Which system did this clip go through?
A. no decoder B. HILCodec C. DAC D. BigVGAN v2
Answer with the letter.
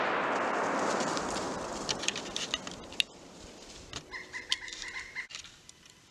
A